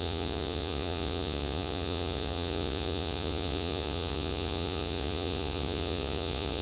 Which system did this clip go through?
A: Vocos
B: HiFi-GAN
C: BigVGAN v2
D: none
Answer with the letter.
A